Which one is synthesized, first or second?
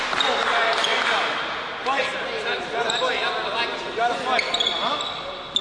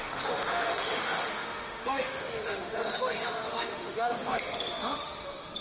second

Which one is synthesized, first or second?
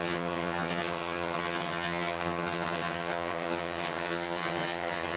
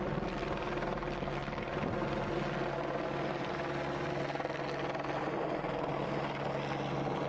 first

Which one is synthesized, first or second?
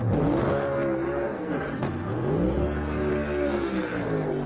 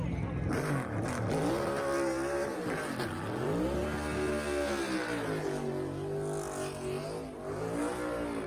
first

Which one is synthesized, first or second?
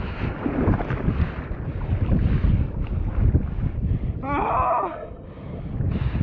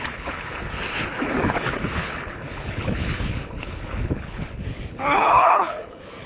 second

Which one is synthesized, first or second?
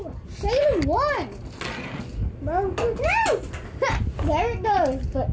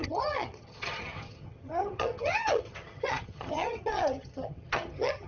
second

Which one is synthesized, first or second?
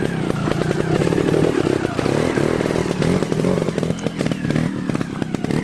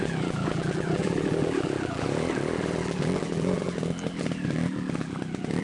second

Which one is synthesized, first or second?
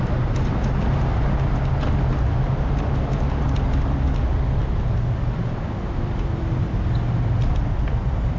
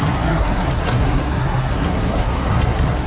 second